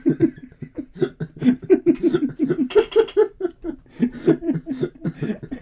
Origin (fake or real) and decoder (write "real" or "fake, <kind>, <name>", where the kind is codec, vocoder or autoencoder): fake, vocoder, BigVGAN v2